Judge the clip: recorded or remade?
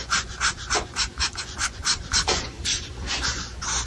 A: remade